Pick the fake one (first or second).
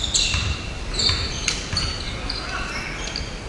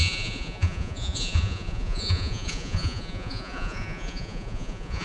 second